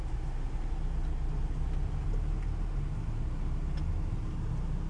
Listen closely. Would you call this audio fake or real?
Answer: real